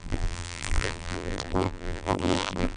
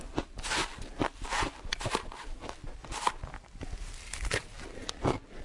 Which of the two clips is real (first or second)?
second